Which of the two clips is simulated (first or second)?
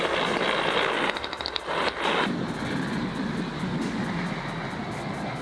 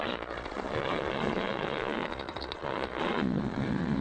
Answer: second